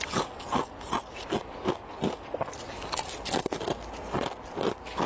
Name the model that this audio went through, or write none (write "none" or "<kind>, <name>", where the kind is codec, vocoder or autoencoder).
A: none